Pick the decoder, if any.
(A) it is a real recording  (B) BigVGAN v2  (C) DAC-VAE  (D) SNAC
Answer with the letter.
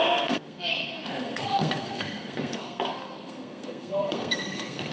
D